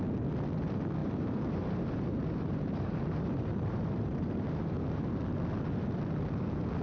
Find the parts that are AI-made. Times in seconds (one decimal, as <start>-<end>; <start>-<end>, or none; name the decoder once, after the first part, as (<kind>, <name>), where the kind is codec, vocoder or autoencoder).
1.0-5.1 (vocoder, BigVGAN v2)